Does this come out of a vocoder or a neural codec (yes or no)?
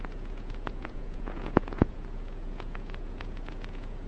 yes